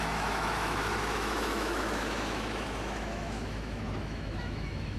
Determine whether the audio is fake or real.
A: fake